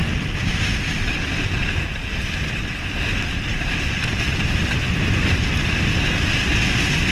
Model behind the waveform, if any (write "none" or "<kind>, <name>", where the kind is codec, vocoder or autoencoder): none